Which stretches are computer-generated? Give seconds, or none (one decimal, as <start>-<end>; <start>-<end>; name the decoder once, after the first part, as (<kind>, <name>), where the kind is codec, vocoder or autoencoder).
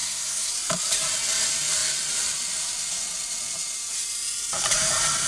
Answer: 0.0-0.5 (codec, SNAC)